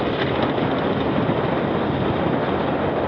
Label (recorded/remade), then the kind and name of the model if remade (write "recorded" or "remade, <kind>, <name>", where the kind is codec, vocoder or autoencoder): recorded